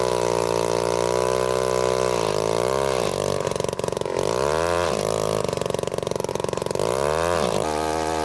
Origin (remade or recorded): recorded